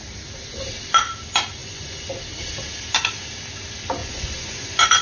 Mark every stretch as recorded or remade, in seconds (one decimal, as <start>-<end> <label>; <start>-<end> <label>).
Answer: 0.0-1.6 recorded; 1.6-2.1 remade; 2.1-4.0 recorded; 4.0-5.0 remade